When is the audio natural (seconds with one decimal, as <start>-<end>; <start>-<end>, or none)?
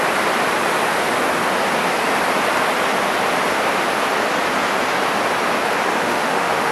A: 0.0-6.0